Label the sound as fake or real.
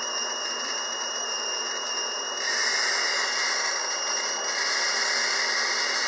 real